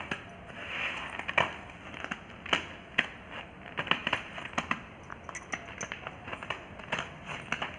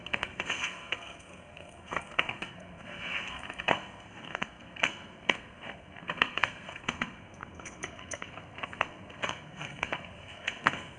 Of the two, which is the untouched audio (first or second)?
first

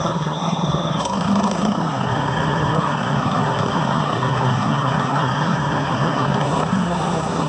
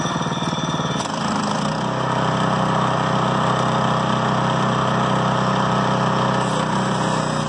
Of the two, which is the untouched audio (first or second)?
second